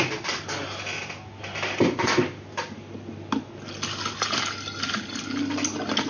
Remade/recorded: recorded